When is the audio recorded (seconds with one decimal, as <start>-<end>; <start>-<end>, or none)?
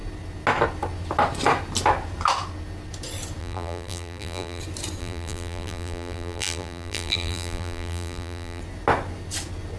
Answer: 0.0-3.4; 4.6-5.0; 8.6-9.8